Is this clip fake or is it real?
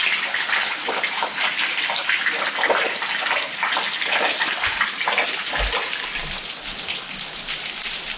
real